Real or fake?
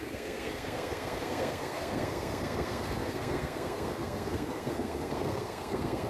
fake